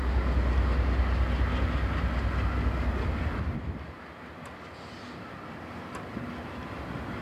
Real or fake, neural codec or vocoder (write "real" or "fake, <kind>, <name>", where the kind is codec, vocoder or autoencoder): real